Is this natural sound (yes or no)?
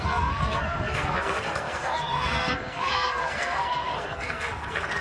no